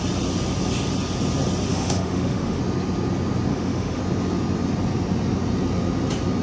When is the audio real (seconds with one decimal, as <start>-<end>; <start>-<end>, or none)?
0.0-1.7; 2.6-3.5; 4.0-6.4